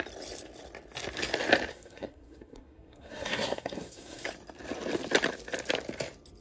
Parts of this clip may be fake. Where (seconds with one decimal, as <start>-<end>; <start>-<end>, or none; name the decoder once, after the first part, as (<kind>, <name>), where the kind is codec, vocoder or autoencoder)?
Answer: 1.7-4.3 (codec, SNAC)